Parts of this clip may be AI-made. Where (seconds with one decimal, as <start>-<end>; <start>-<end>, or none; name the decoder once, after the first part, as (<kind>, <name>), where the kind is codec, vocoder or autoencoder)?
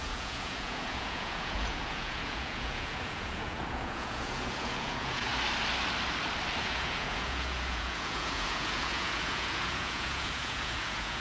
0.0-5.3 (vocoder, Vocos); 6.6-11.2